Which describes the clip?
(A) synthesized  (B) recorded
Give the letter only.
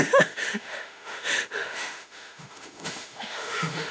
A